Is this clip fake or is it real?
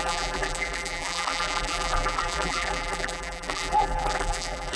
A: fake